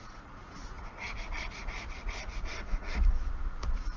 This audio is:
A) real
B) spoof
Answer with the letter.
B